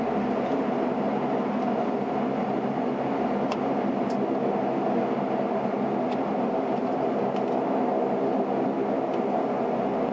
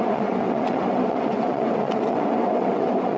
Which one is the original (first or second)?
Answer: first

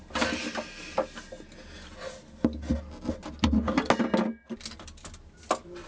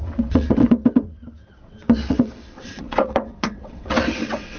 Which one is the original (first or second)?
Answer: first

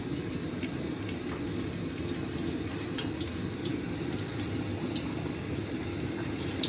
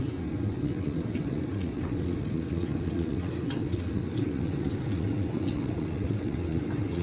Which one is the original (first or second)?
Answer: first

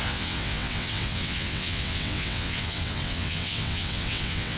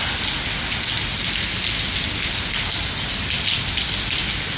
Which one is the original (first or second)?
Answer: second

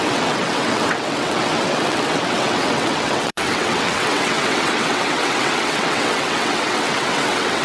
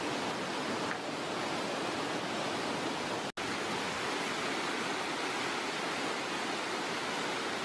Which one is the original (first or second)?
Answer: second